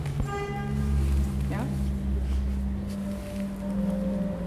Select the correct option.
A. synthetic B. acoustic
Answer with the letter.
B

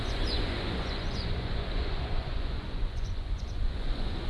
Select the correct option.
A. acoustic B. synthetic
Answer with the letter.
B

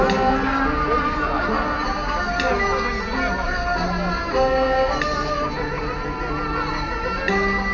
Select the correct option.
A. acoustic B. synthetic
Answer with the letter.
A